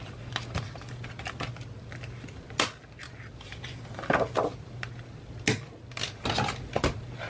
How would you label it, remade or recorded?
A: recorded